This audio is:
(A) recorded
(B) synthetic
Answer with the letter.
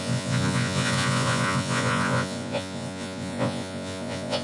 B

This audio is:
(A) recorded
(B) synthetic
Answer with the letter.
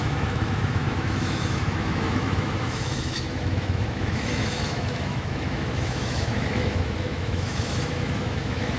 B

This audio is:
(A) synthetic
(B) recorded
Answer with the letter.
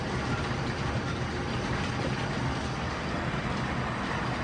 B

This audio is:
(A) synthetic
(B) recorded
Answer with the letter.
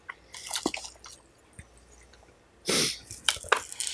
A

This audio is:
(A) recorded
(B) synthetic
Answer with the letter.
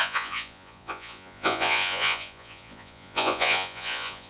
B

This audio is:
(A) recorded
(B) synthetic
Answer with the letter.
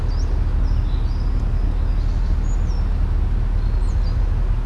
A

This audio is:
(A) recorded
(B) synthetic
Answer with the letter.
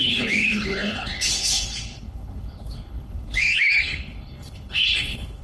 B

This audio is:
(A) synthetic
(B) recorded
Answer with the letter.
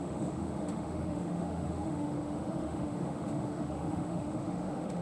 A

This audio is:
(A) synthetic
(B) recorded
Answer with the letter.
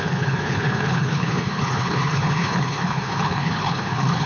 A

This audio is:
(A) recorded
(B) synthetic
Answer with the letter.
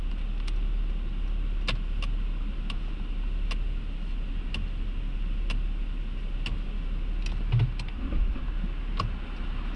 A